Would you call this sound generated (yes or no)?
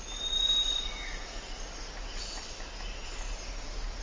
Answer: no